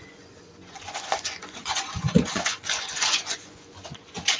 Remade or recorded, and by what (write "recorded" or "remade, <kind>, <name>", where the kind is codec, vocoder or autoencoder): remade, vocoder, Vocos